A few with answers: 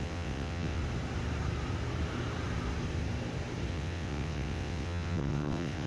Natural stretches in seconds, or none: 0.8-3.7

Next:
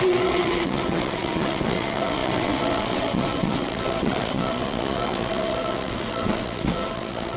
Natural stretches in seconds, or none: none

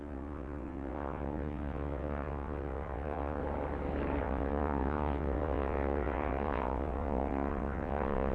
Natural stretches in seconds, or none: 3.4-4.2

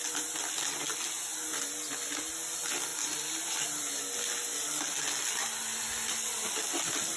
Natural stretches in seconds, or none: 0.0-7.2

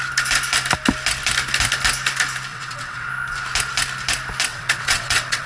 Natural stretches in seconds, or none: 0.0-2.5; 3.1-4.5

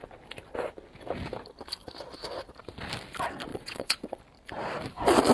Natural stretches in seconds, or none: 0.0-3.5; 4.2-5.3

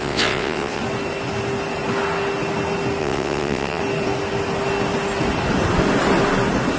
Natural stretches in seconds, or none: 0.8-3.0; 3.8-6.8